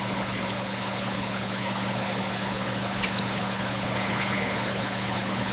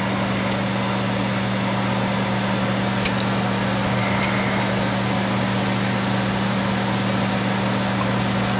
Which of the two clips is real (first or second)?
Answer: second